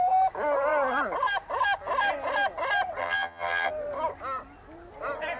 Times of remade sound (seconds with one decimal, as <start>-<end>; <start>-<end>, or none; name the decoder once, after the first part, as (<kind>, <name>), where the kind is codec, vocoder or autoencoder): 3.0-3.7 (vocoder, HiFi-GAN)